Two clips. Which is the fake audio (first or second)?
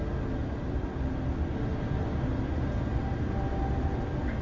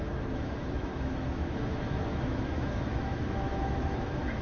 second